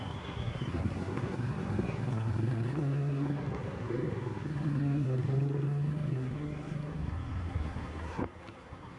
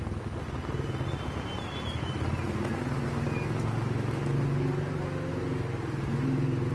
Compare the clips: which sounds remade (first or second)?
first